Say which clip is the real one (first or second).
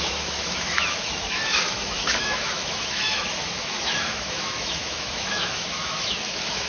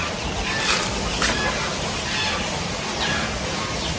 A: second